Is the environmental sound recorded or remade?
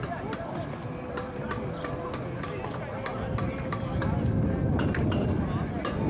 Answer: recorded